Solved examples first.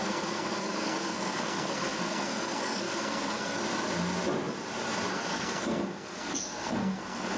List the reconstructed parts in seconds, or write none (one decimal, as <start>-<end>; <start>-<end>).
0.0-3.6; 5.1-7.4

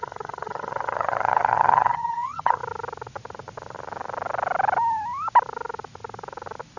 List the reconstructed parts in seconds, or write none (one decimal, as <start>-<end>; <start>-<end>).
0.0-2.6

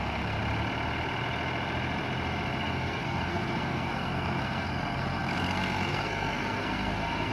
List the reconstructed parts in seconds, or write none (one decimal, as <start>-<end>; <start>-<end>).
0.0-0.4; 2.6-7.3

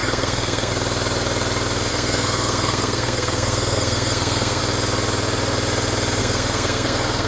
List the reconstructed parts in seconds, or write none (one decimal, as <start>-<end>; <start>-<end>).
0.0-0.7; 1.9-4.6; 6.2-7.3

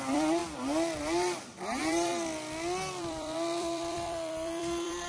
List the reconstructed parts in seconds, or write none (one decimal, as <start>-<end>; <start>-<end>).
0.0-0.4; 1.0-2.1; 3.0-5.1